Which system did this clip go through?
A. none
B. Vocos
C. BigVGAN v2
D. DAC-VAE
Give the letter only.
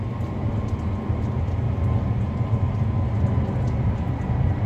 A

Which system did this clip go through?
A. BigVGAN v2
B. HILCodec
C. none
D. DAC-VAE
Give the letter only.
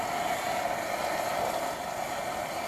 C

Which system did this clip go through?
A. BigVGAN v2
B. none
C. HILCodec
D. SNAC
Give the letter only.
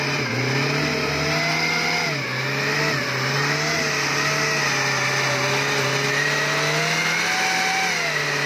B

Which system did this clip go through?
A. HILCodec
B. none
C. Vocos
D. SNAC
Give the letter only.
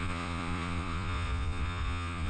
C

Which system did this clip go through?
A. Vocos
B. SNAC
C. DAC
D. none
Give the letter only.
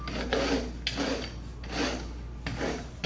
D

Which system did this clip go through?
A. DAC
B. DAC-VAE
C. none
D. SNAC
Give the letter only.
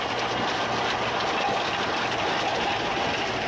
C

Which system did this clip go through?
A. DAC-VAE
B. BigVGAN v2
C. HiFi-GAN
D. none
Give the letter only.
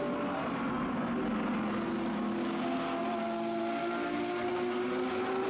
D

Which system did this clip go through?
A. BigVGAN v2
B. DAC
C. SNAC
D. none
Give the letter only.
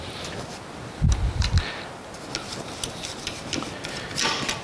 D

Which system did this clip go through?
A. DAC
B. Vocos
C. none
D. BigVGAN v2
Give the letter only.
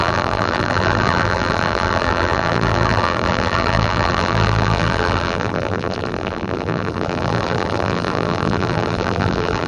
D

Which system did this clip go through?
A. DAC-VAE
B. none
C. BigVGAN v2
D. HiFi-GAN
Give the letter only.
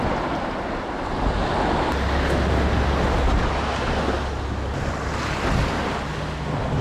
B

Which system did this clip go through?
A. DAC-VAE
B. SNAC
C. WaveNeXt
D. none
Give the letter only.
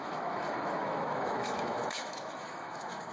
A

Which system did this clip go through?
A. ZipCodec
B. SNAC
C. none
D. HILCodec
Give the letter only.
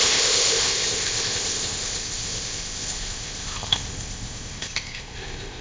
A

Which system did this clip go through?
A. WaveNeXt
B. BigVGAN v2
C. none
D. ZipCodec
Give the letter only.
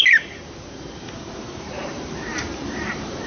B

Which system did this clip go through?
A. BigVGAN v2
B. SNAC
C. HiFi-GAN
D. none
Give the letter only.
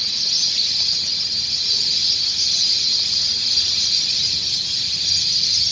D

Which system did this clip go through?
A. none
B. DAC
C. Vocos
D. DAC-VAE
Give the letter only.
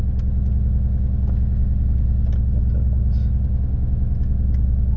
A